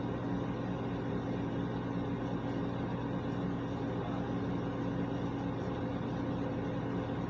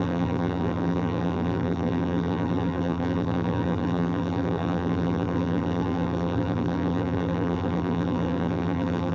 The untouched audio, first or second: first